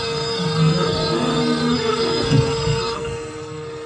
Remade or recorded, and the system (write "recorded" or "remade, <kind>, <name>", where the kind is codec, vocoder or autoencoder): remade, codec, SNAC